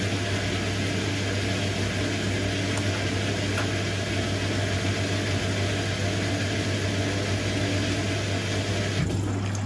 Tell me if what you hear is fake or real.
real